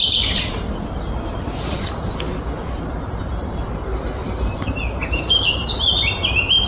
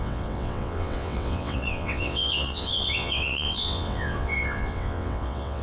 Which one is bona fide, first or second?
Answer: first